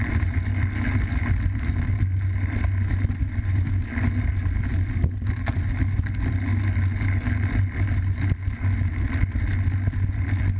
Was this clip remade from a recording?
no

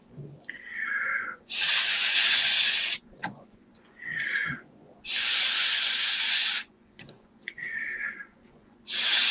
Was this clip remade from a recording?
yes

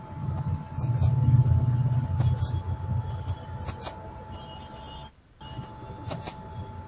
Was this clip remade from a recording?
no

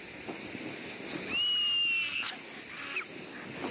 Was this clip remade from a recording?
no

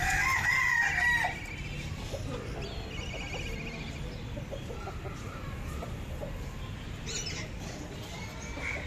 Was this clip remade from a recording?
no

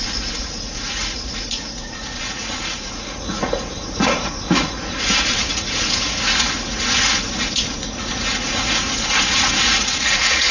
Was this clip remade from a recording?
yes